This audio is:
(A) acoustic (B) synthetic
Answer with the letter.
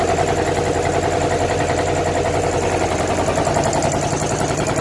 A